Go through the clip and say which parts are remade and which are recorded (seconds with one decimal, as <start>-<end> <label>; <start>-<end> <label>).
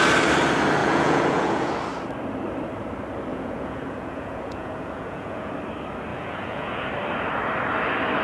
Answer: 0.0-0.8 recorded; 0.8-1.7 remade; 1.7-3.3 recorded; 3.3-5.5 remade; 5.5-6.1 recorded; 6.1-6.9 remade; 6.9-8.2 recorded